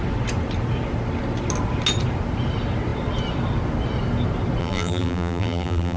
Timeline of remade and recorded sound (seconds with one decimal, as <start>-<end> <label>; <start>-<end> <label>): 0.0-4.6 recorded; 4.6-6.0 remade